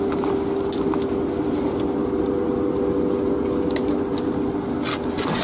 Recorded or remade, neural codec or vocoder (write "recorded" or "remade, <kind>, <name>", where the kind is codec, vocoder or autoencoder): recorded